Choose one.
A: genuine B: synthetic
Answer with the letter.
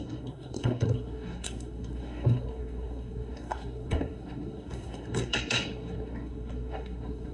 B